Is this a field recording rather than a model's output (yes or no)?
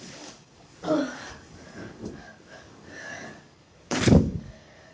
no